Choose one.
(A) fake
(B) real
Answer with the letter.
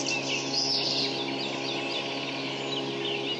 B